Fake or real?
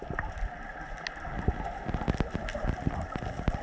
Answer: real